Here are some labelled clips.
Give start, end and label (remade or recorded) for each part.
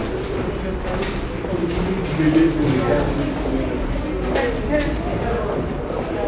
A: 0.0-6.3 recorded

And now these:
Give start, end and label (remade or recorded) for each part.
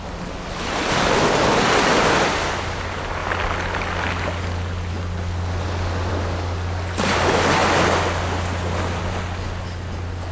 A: 0.0-10.3 recorded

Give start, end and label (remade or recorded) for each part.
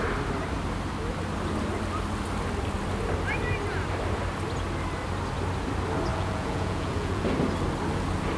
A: 0.0-6.1 recorded; 6.1-7.2 remade; 7.2-8.4 recorded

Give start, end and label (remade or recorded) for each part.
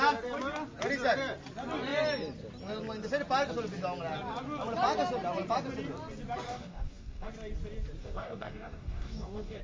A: 0.0-6.5 recorded; 6.5-7.3 remade; 7.3-8.0 recorded; 8.0-9.6 remade